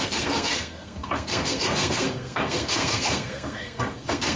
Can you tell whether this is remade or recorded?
remade